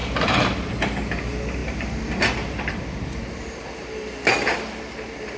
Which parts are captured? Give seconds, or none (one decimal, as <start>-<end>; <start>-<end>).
0.7-1.6; 4.1-5.4